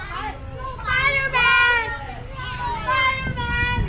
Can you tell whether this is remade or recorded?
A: recorded